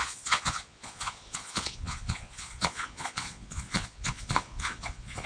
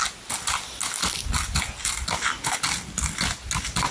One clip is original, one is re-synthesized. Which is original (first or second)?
second